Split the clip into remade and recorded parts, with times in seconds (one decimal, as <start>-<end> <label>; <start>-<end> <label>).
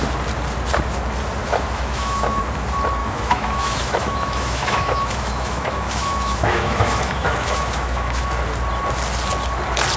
0.0-1.4 recorded; 1.4-2.4 remade; 2.4-3.0 recorded; 3.0-8.3 remade; 8.3-10.0 recorded